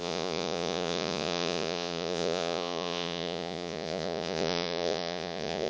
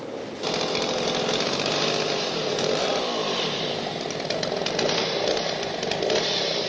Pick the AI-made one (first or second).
first